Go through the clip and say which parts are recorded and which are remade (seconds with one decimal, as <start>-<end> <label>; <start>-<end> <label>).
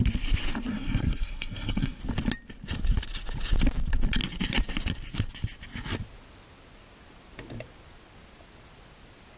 0.0-0.7 recorded; 0.7-2.0 remade; 2.0-9.4 recorded